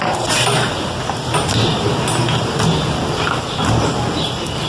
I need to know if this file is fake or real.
real